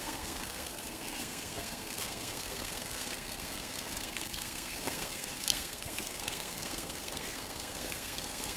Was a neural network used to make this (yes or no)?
yes